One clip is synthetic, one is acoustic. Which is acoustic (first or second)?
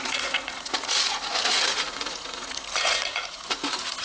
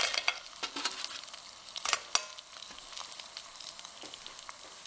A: second